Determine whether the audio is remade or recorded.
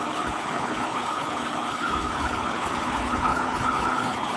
remade